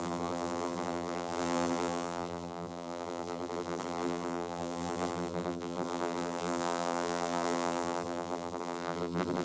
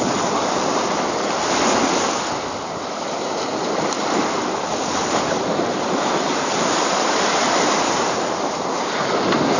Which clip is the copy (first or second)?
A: first